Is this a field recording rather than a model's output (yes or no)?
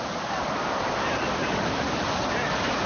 yes